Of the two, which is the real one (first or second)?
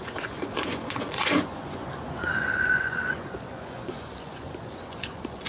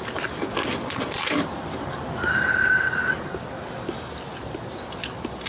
second